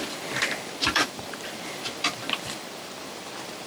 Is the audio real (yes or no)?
no